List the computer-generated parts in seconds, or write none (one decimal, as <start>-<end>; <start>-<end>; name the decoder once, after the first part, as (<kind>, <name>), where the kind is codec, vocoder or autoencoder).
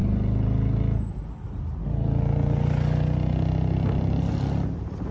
none